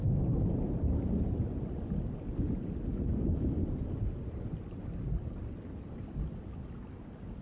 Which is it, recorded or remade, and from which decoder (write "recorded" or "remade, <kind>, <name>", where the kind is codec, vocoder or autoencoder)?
recorded